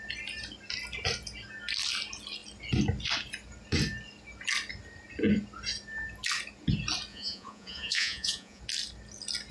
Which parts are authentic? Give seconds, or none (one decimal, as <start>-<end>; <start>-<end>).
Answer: 0.0-7.1; 8.6-9.5